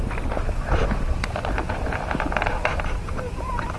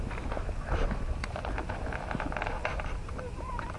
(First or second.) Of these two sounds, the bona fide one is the second